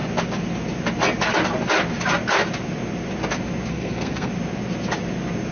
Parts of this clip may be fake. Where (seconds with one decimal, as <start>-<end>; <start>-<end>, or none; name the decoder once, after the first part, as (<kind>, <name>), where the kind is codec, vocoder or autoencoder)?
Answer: 3.7-4.3 (codec, SNAC)

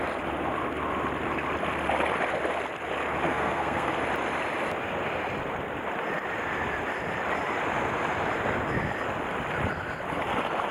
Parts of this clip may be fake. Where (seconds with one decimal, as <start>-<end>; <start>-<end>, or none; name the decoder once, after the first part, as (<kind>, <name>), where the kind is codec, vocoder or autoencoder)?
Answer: 3.3-3.9 (codec, SNAC)

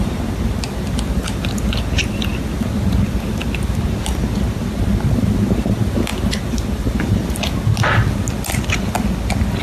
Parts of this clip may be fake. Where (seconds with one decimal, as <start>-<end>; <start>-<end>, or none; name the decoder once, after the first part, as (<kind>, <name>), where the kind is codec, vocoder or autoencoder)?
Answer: none

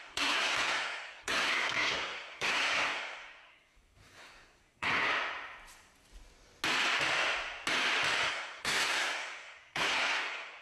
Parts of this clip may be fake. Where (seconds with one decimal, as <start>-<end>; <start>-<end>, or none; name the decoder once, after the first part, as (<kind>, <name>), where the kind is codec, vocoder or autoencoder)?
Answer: 0.0-5.1 (codec, SNAC); 8.3-10.6